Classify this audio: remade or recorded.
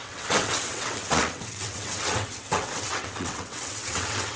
remade